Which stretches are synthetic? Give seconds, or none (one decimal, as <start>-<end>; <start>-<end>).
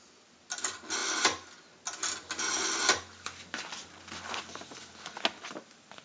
none